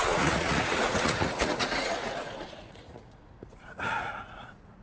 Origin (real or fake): fake